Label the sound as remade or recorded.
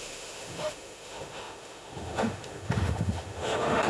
remade